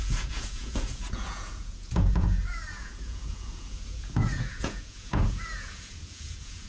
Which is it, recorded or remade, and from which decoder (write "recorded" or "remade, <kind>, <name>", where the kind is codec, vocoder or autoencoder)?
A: remade, vocoder, Vocos